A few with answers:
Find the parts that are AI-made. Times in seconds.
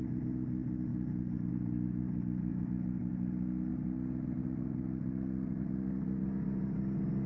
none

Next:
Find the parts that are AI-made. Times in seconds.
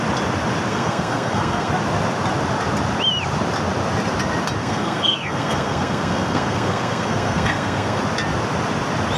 0.7-1.7; 4.6-8.0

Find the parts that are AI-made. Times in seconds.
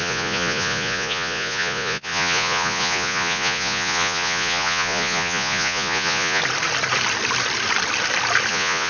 0.0-6.4; 8.5-8.9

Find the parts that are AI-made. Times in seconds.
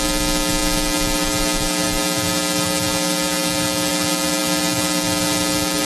none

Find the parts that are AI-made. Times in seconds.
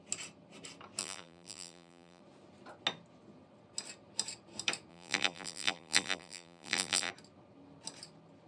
1.0-2.2; 4.9-7.1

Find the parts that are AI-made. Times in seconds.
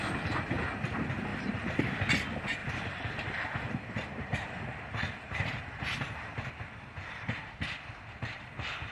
1.3-1.8; 2.6-7.5